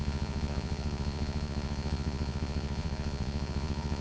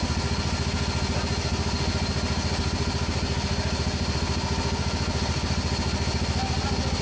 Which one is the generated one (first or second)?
first